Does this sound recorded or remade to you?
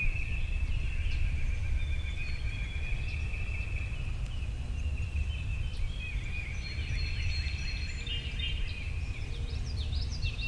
remade